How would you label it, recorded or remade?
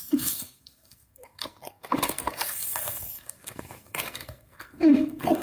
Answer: remade